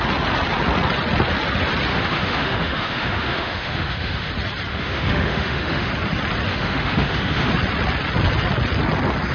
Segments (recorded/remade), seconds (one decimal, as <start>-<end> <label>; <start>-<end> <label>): 0.0-1.9 recorded; 1.9-4.3 remade; 4.3-4.7 recorded; 4.7-5.9 remade; 5.9-6.5 recorded; 6.5-7.5 remade; 7.5-9.3 recorded